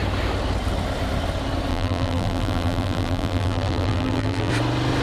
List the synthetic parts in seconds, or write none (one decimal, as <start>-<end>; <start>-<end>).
1.7-4.5